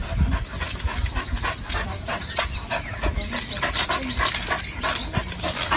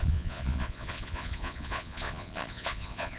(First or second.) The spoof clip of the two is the second